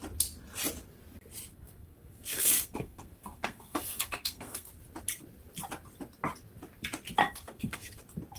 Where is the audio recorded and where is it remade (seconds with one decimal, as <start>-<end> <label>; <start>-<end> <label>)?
0.0-1.5 recorded; 1.5-4.7 remade; 4.7-7.2 recorded; 7.2-8.0 remade; 8.0-8.4 recorded